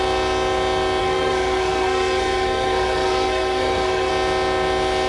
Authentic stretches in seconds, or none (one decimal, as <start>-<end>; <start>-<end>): 0.0-1.0; 4.1-5.1